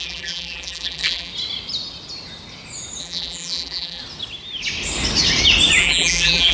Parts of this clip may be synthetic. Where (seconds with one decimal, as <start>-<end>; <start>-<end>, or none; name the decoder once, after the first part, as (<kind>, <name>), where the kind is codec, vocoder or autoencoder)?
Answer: 0.0-1.3 (vocoder, BigVGAN v2); 3.0-4.0; 5.8-6.5